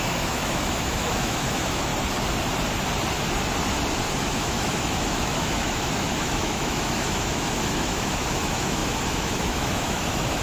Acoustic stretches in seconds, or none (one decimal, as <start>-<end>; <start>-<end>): 1.9-4.2